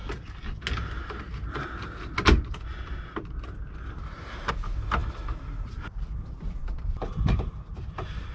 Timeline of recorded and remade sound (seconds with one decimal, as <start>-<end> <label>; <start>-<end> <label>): 0.0-5.0 recorded; 5.0-5.7 remade; 5.7-6.6 recorded; 6.6-7.1 remade; 7.1-8.3 recorded

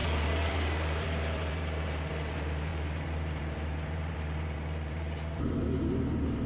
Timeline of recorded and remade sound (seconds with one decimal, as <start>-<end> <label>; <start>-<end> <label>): 0.0-6.5 remade

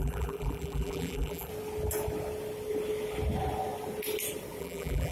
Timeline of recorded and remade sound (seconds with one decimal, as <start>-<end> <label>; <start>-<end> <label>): 0.0-1.5 remade; 1.5-4.6 recorded; 4.6-5.1 remade

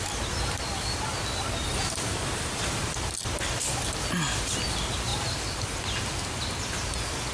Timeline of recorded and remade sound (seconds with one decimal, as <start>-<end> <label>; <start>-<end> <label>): 0.0-1.7 recorded; 1.7-2.6 remade; 2.6-7.3 recorded

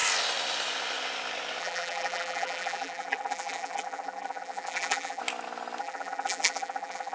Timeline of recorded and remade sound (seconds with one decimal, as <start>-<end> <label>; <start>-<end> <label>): 0.0-1.6 recorded; 1.6-5.2 remade; 5.2-5.8 recorded; 5.8-7.1 remade

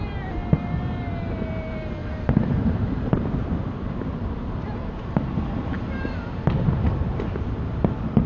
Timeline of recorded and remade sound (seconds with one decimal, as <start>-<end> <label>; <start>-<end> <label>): 0.0-2.0 recorded; 2.0-5.1 remade; 5.1-8.3 recorded

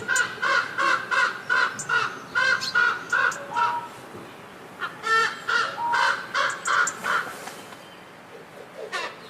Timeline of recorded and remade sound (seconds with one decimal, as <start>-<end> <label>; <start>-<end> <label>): 0.0-5.2 recorded; 5.2-6.4 remade; 6.4-7.0 recorded; 7.0-7.8 remade; 7.8-9.3 recorded

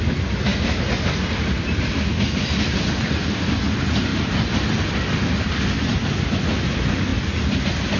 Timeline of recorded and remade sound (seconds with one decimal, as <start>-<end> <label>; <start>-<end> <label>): 0.0-7.1 recorded; 7.1-7.6 remade; 7.6-8.0 recorded